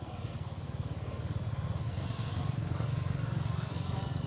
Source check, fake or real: fake